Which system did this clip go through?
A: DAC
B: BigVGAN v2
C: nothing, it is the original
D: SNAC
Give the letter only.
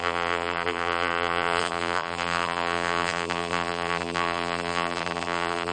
B